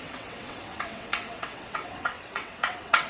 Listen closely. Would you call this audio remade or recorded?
remade